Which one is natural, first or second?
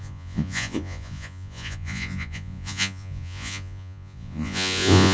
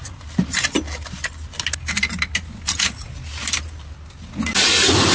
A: second